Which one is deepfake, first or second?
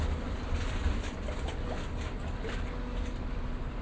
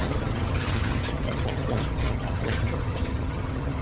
second